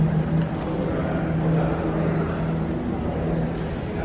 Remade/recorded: recorded